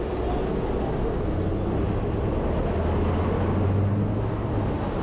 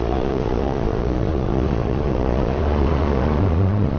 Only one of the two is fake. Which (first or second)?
second